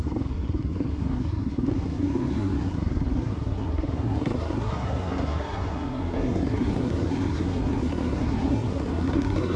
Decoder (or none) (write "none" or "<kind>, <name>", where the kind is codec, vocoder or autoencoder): codec, SNAC